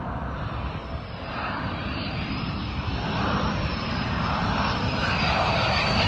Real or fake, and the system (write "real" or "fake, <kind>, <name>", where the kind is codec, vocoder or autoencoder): real